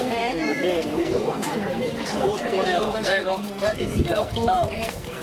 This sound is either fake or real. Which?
fake